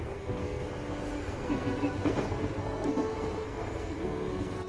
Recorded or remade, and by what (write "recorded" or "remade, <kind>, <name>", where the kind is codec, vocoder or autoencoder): remade, codec, SNAC